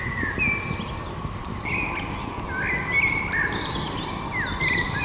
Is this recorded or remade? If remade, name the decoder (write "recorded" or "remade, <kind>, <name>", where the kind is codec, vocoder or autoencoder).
recorded